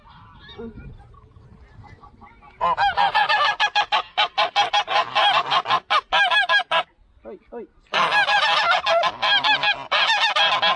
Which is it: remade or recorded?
recorded